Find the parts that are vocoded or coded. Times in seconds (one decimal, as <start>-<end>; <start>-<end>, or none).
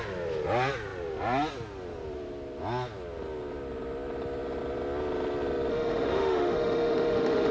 5.7-7.5